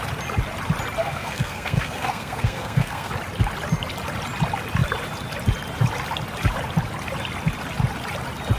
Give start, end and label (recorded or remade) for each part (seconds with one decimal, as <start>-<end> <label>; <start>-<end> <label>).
0.0-1.0 recorded; 1.0-3.1 remade; 3.1-8.6 recorded